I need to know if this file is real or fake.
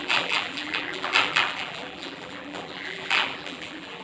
fake